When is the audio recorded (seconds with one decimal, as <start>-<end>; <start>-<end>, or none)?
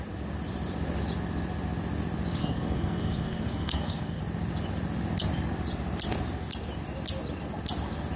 0.0-2.4; 4.2-8.2